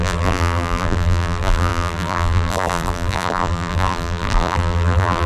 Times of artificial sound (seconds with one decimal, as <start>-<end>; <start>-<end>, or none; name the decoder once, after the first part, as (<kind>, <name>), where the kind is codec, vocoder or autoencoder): 0.0-5.3 (vocoder, BigVGAN v2)